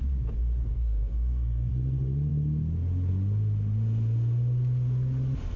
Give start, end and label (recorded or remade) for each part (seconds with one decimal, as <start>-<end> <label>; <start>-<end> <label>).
0.0-0.7 recorded; 0.7-1.7 remade; 1.7-5.6 recorded